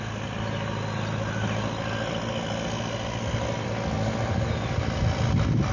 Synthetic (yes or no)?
no